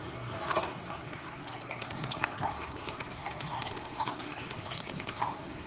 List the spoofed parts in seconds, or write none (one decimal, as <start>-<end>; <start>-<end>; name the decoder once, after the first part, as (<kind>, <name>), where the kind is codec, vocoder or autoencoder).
0.0-5.7 (codec, SNAC)